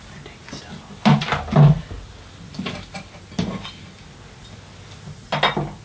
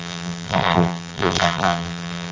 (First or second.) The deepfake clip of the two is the second